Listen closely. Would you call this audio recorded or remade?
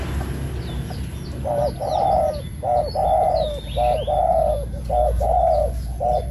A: recorded